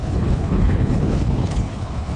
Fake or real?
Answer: fake